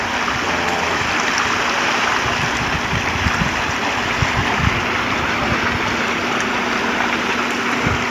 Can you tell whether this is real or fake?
real